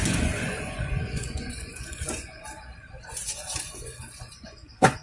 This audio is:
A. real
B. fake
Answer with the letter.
B